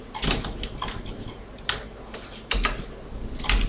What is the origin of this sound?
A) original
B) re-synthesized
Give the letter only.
A